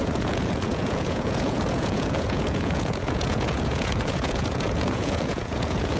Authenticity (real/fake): fake